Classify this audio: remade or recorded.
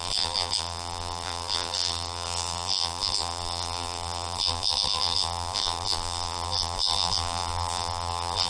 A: remade